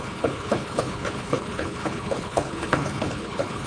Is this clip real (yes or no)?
no